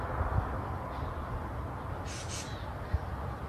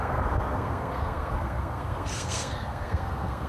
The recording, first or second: first